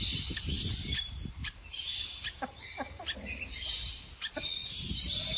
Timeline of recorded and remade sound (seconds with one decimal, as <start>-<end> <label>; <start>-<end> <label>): 0.0-1.4 recorded; 1.4-2.5 remade; 2.5-5.4 recorded